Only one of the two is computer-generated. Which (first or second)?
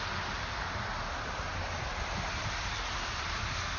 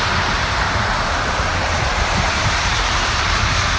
second